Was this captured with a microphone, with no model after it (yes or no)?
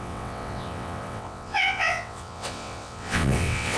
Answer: no